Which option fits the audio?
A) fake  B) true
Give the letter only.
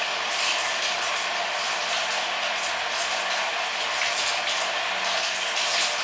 B